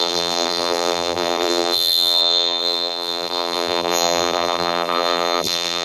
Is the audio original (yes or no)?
no